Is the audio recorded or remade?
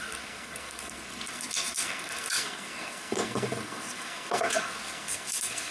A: remade